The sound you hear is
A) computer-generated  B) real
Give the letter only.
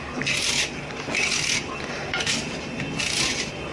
B